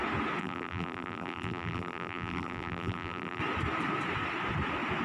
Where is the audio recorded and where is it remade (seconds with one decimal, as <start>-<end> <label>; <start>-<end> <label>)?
0.0-0.4 recorded; 0.4-3.4 remade; 3.4-5.0 recorded